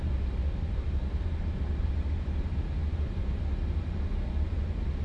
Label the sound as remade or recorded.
recorded